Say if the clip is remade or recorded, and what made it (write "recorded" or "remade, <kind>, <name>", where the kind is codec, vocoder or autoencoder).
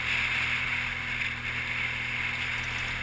recorded